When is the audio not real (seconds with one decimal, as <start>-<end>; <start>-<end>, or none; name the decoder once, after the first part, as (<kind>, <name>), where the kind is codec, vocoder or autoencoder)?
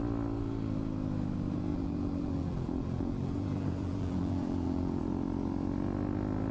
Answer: 1.7-5.0 (vocoder, BigVGAN v2)